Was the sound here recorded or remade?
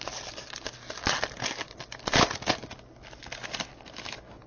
recorded